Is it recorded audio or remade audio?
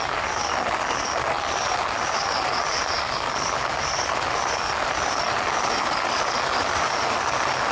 recorded